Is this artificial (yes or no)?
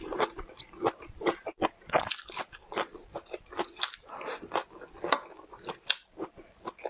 no